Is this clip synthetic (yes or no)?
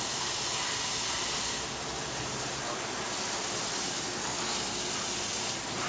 no